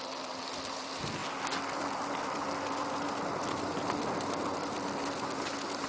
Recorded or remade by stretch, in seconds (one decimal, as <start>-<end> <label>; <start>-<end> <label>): 0.0-5.9 recorded